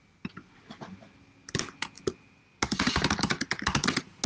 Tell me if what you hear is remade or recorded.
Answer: recorded